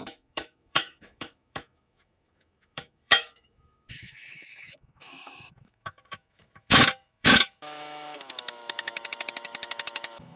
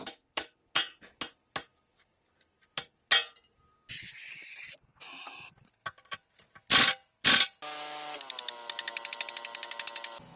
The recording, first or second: second